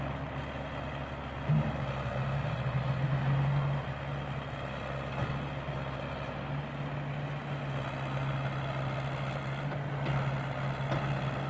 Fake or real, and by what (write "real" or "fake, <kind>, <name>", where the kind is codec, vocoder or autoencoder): real